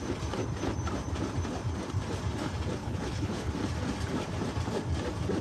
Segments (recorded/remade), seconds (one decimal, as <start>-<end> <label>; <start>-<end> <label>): 0.0-2.8 recorded; 2.8-3.5 remade; 3.5-5.4 recorded